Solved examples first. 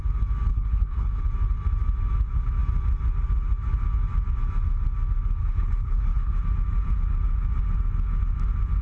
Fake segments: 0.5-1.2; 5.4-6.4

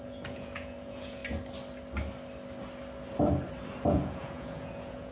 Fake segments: 0.0-1.2; 3.9-5.1

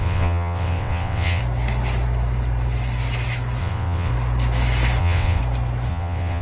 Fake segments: 0.0-1.4; 3.6-4.1; 5.0-5.4; 5.9-6.4

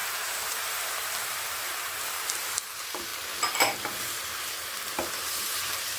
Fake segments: 0.0-3.1; 5.1-6.0

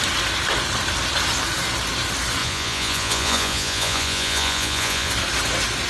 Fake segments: 2.4-5.1

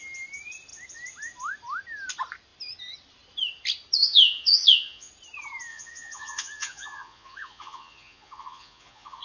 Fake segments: 4.0-5.1; 5.7-9.2

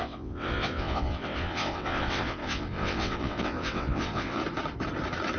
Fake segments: 0.0-4.4

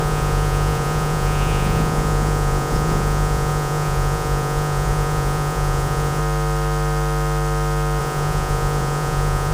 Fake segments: 0.0-6.2; 8.0-9.5